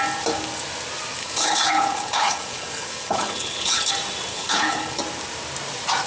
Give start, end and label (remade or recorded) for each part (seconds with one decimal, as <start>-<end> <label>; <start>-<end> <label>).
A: 0.0-1.2 recorded; 1.2-3.9 remade; 3.9-4.3 recorded; 4.3-5.0 remade; 5.0-6.1 recorded